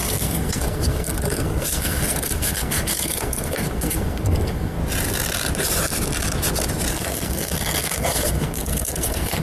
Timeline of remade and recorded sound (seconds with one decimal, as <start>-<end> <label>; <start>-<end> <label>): 0.0-4.8 remade; 4.8-6.9 recorded; 6.9-9.4 remade